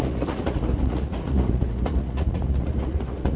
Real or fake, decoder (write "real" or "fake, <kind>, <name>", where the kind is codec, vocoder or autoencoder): fake, vocoder, Vocos